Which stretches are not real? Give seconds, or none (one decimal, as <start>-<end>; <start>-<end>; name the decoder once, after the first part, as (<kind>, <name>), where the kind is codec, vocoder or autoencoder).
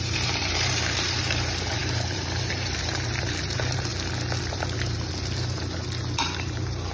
0.0-3.9 (vocoder, BigVGAN v2); 4.4-6.9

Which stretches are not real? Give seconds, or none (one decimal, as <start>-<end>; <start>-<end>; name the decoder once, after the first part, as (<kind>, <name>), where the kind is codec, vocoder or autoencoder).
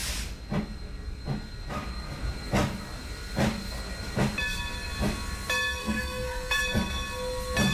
5.8-6.6 (codec, SNAC)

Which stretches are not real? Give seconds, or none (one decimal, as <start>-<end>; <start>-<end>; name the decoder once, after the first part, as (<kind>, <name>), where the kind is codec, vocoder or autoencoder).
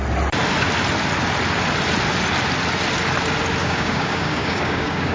3.6-5.1 (codec, DAC)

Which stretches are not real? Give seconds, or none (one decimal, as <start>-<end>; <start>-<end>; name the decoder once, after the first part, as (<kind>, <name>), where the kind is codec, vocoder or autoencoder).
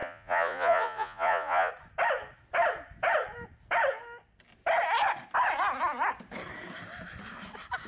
0.0-1.7 (vocoder, Vocos)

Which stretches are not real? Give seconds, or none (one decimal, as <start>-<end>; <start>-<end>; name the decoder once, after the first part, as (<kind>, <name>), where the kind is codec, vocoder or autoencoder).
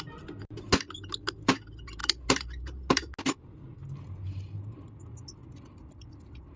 none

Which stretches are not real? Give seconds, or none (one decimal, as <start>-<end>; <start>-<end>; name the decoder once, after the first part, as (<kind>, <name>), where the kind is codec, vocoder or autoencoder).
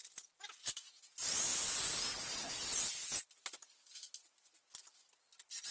none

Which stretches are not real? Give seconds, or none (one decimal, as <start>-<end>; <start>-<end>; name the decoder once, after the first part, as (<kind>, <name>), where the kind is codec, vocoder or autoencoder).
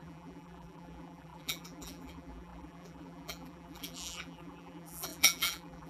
0.0-5.9 (vocoder, BigVGAN v2)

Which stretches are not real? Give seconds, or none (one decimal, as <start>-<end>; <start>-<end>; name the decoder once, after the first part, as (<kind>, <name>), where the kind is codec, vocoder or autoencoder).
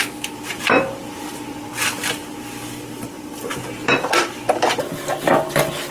0.5-1.7 (vocoder, BigVGAN v2); 3.1-4.8